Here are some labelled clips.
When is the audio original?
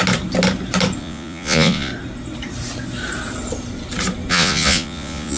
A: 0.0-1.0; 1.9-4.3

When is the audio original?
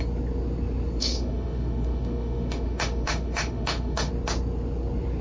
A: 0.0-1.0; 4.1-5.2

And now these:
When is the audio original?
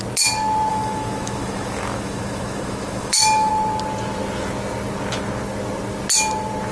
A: 0.0-0.7; 3.5-6.7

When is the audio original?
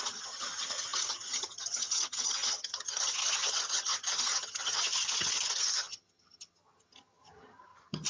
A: none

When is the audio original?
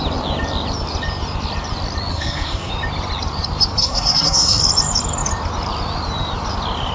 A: 0.0-2.1; 2.7-3.8; 4.6-6.9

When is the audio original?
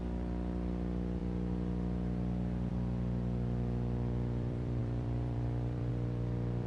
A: 1.2-2.7